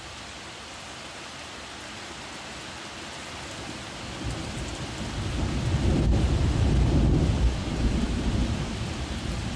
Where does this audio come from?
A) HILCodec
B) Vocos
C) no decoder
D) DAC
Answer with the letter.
C